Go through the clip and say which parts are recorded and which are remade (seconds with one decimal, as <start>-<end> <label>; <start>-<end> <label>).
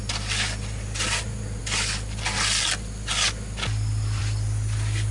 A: 0.0-5.1 recorded